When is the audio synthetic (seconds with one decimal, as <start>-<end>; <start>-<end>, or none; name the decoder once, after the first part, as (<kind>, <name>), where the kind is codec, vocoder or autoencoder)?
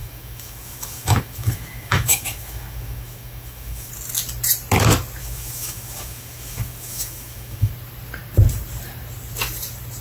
0.0-3.9 (autoencoder, DAC-VAE); 5.2-7.7